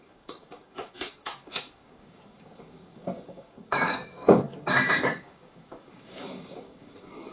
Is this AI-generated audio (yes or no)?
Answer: yes